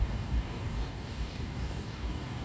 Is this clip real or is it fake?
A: fake